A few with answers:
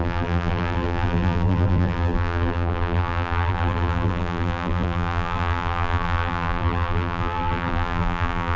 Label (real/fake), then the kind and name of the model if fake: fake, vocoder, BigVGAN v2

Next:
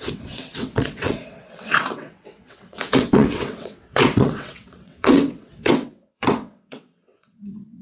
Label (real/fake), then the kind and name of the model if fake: fake, vocoder, WaveNeXt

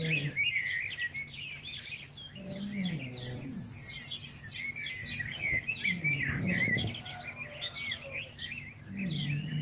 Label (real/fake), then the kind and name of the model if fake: real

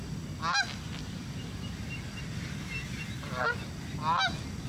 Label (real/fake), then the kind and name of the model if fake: real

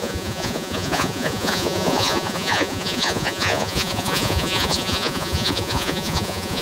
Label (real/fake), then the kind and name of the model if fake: fake, vocoder, Vocos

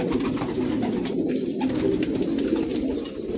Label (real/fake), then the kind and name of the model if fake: real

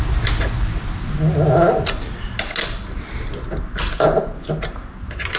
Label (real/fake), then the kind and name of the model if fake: real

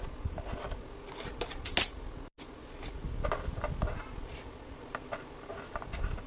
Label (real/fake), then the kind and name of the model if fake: real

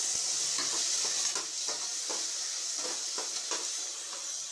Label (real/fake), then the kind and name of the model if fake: real